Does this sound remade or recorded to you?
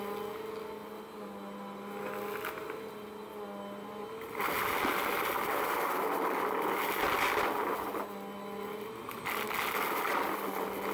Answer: recorded